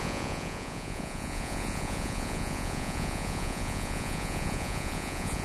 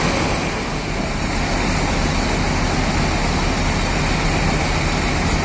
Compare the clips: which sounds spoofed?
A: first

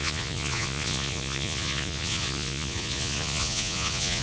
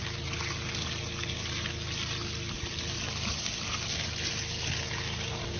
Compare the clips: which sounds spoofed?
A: first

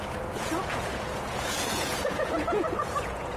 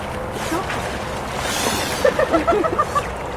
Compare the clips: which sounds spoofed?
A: first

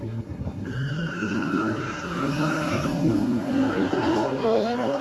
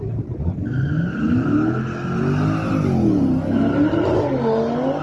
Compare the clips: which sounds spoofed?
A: first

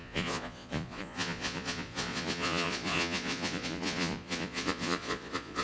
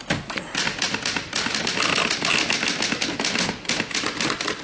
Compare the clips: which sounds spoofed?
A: first